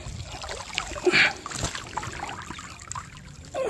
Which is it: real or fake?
real